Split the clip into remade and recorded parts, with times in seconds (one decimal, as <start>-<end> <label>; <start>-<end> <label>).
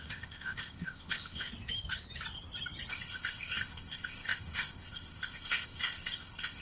0.0-1.5 remade; 1.5-2.9 recorded; 2.9-6.6 remade